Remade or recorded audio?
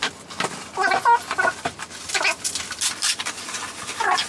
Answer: recorded